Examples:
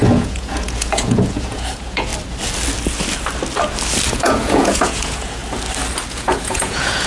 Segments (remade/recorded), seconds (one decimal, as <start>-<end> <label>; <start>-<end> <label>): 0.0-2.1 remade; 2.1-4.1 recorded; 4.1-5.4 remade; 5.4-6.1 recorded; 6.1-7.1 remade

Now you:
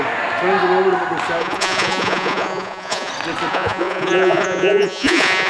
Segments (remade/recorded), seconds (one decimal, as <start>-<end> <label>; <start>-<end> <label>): 0.0-1.4 recorded; 1.4-3.1 remade; 3.1-3.5 recorded; 3.5-5.5 remade

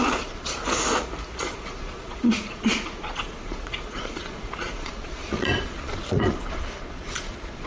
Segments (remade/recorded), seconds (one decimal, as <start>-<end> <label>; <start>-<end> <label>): 0.0-0.6 remade; 0.6-1.4 recorded; 1.4-7.7 remade

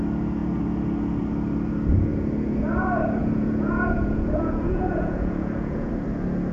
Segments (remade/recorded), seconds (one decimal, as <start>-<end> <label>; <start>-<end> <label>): 0.0-3.2 recorded; 3.2-5.9 remade; 5.9-6.5 recorded